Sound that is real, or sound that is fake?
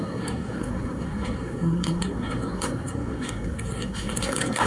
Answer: fake